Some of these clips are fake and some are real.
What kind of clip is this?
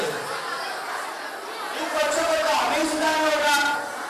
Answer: real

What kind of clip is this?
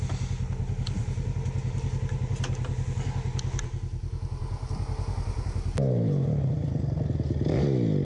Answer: real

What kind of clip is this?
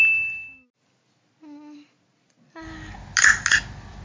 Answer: real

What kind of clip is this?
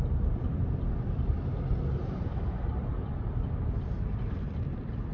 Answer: fake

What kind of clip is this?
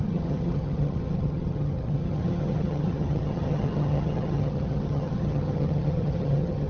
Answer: fake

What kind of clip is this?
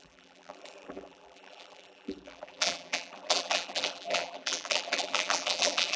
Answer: fake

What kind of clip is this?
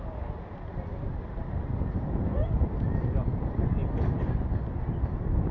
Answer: real